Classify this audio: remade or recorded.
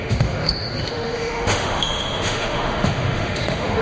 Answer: remade